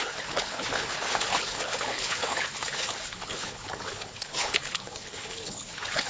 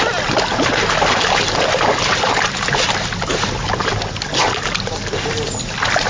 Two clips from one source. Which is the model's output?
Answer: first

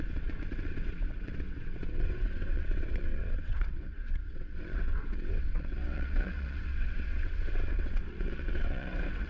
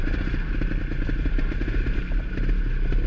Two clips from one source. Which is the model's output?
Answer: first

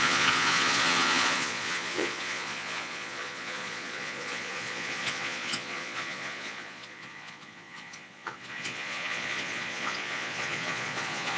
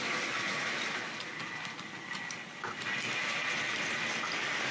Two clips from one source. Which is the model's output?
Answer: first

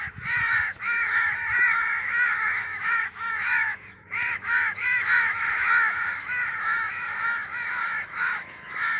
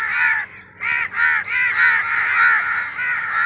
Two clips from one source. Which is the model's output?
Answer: first